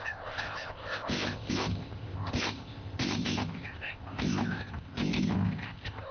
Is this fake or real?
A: fake